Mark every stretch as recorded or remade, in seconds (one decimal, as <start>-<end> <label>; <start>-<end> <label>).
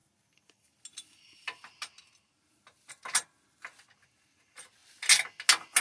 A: 0.0-5.8 recorded